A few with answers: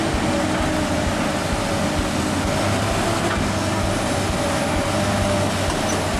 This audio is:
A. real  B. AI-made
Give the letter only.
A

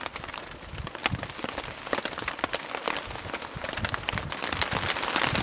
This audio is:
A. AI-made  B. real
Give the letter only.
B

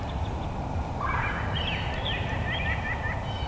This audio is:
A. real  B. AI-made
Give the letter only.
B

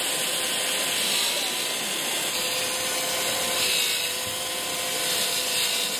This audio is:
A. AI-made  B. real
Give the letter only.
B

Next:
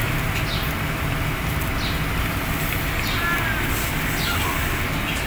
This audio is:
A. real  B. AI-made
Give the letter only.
A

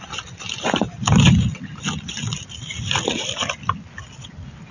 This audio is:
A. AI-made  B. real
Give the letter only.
B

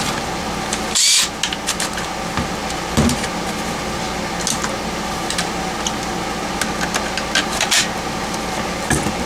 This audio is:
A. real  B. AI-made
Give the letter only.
A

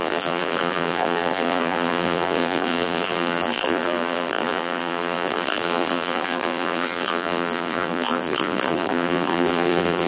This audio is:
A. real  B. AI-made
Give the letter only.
B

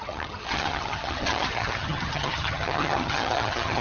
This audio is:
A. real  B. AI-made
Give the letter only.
B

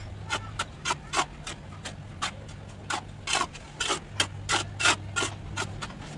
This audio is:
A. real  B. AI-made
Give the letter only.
A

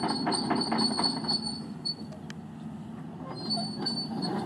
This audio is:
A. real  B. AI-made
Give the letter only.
A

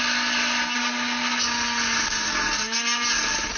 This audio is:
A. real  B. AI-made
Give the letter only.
A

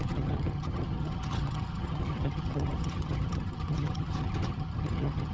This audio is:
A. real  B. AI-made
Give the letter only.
B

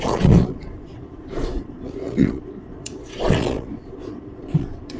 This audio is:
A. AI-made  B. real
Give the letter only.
A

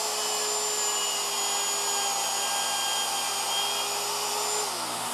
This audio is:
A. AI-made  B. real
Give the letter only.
B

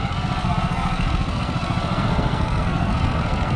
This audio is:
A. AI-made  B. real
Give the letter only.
A